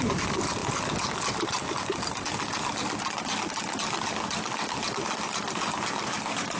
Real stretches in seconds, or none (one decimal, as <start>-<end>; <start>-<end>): 0.0-6.6